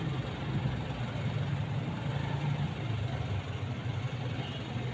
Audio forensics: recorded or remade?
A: recorded